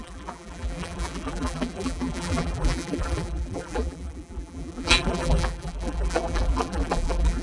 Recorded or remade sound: remade